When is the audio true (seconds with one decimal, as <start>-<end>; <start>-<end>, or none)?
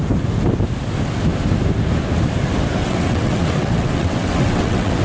0.0-2.8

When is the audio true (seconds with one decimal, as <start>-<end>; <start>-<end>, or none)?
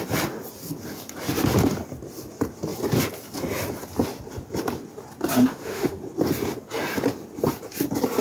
0.0-5.5; 6.0-8.2